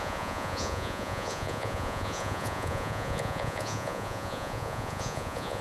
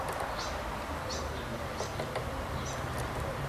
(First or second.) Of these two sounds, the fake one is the first